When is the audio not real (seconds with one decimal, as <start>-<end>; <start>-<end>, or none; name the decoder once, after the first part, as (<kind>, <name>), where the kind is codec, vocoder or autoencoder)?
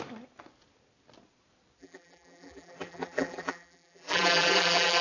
1.8-5.0 (vocoder, BigVGAN v2)